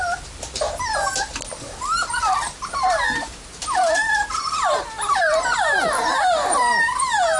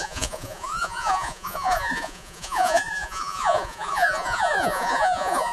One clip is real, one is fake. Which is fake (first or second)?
second